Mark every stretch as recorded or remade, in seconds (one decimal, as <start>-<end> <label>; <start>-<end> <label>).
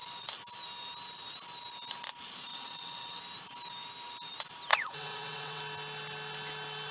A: 0.0-2.5 recorded; 2.5-3.2 remade; 3.2-4.7 recorded; 4.7-5.6 remade; 5.6-6.9 recorded